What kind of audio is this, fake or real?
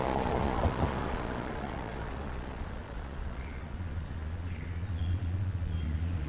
fake